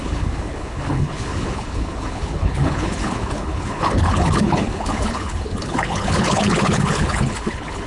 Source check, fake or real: fake